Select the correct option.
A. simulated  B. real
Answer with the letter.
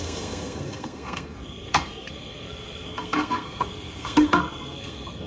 A